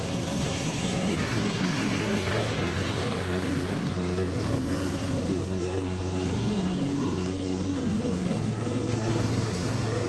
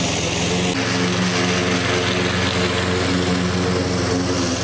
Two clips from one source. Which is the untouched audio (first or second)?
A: second